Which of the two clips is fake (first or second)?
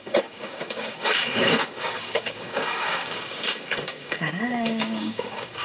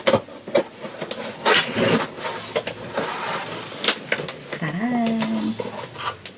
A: first